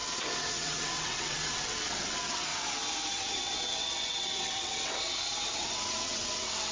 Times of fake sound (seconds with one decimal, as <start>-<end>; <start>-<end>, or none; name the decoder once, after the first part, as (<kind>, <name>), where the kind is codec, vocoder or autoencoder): 0.0-2.5 (vocoder, WaveNeXt); 3.2-6.7